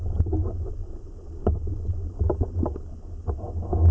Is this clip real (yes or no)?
yes